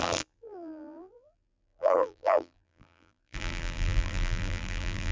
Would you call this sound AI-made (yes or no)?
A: yes